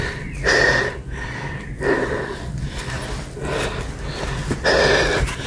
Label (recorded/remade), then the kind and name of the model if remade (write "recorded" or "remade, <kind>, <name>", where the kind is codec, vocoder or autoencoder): recorded